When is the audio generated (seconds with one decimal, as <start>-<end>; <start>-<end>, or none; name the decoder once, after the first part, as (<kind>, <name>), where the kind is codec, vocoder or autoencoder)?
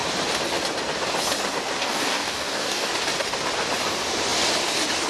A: 1.8-2.9 (codec, DAC)